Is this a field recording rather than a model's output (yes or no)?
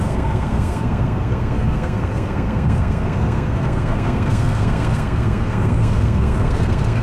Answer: no